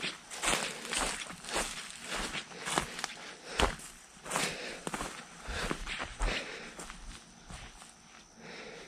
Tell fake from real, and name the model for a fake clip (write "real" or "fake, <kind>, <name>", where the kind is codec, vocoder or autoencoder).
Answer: real